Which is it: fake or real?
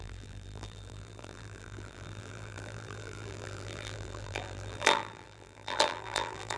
fake